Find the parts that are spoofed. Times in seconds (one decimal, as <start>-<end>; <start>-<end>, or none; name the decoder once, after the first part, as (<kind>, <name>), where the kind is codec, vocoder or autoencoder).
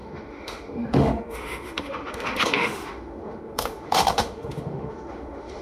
0.0-5.6 (autoencoder, DAC-VAE)